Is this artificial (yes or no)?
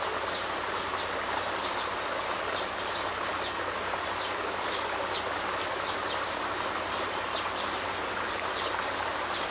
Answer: no